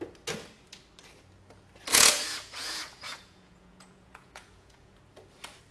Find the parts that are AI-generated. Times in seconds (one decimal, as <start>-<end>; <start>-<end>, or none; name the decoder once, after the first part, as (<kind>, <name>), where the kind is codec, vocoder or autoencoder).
1.9-5.0 (vocoder, Vocos)